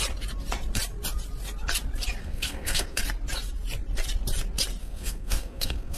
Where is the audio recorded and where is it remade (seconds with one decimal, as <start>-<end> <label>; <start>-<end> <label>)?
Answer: 0.0-2.2 recorded; 2.2-3.0 remade; 3.0-4.8 recorded; 4.8-6.0 remade